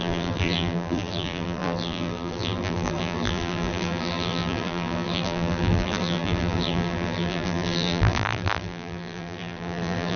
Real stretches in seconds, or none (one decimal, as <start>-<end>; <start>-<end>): none

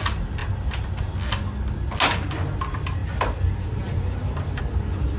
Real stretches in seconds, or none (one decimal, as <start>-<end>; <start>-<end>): 0.0-5.2

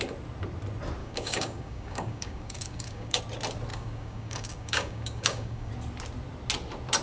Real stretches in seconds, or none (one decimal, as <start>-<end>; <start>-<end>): 0.0-1.0; 3.2-3.7; 5.7-7.0

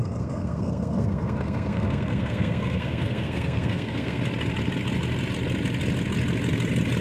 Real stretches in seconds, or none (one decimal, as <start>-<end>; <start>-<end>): 4.2-7.0

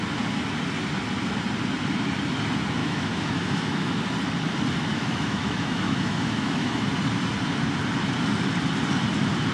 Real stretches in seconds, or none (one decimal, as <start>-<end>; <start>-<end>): 0.0-2.8; 4.0-4.9; 6.9-9.5

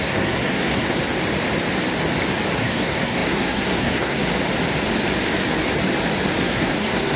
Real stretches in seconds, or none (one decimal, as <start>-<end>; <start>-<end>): 1.0-2.6; 4.3-6.4

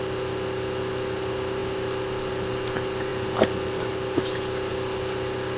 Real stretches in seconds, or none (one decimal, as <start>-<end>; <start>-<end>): 0.0-5.6